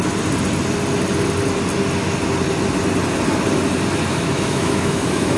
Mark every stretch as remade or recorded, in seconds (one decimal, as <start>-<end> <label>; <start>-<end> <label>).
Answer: 0.0-4.1 recorded; 4.1-5.4 remade